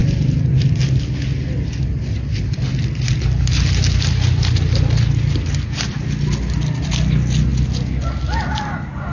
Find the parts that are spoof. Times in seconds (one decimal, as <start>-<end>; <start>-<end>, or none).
none